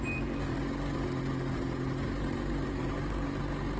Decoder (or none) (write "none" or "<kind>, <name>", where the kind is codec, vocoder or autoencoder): none